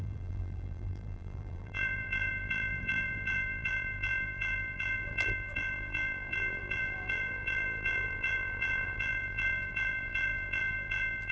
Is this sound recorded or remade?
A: remade